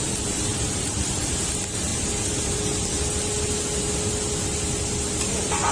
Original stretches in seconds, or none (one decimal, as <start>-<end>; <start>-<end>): 0.0-0.5; 1.3-5.7